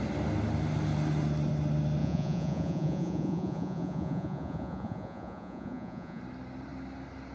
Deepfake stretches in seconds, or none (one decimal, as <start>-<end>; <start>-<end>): 2.0-6.2